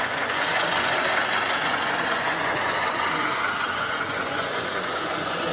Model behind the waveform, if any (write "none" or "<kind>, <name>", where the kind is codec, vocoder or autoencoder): vocoder, Vocos